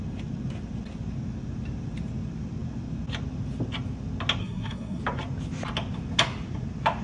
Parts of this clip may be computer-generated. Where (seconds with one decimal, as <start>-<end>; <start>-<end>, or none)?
4.4-5.0